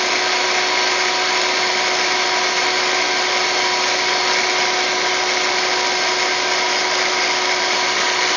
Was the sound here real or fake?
real